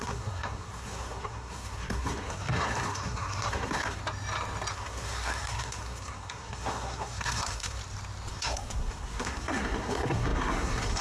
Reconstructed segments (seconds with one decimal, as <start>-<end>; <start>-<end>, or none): 0.0-4.0; 4.7-7.8; 8.3-11.0